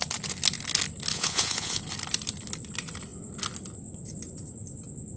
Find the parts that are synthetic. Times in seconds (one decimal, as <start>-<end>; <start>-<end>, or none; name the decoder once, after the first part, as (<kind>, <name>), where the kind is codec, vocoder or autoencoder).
1.1-1.8 (vocoder, Vocos)